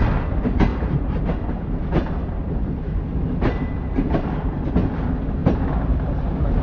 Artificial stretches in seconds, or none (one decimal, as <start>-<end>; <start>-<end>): 0.7-4.7; 5.4-6.6